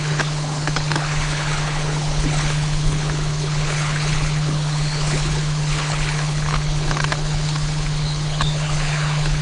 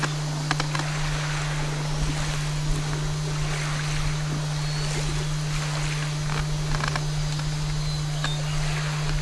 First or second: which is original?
second